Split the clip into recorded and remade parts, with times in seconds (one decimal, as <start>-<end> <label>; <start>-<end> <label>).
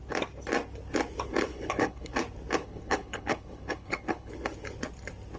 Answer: 0.0-1.5 recorded; 1.5-2.1 remade; 2.1-2.6 recorded; 2.6-4.3 remade; 4.3-5.4 recorded